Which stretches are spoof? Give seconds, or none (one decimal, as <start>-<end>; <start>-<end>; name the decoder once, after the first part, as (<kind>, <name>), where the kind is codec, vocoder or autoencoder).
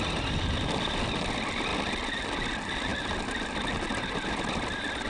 none